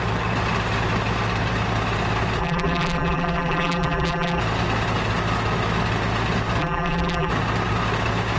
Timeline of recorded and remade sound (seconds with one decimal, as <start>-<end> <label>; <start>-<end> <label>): 0.0-2.4 recorded; 2.4-4.4 remade; 4.4-6.6 recorded; 6.6-7.3 remade; 7.3-8.4 recorded